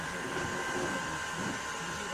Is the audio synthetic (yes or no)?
no